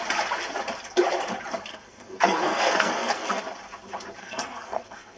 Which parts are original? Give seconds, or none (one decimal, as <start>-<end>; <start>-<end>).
0.0-1.7; 3.4-4.2